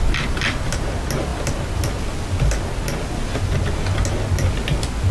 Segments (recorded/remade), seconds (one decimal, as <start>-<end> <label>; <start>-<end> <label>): 0.0-5.1 recorded